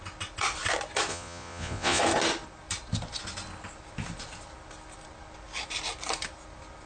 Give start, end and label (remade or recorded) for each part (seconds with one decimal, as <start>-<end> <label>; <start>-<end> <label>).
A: 0.0-1.1 recorded; 1.1-2.0 remade; 2.0-6.9 recorded